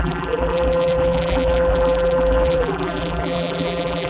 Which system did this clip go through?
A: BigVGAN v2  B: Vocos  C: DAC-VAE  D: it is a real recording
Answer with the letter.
A